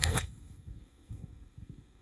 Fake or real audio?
fake